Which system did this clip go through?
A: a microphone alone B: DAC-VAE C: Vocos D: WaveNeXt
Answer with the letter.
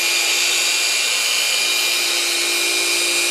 A